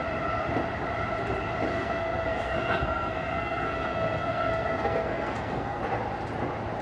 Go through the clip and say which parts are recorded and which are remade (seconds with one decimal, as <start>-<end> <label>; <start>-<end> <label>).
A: 0.0-1.7 recorded; 1.7-5.8 remade; 5.8-6.8 recorded